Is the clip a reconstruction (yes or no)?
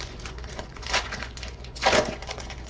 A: yes